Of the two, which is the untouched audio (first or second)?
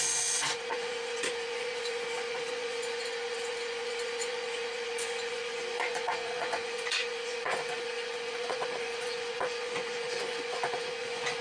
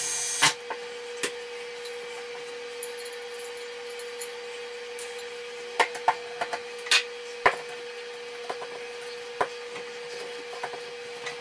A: second